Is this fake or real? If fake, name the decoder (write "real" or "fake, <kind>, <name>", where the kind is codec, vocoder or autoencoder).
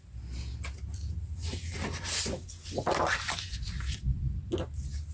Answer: real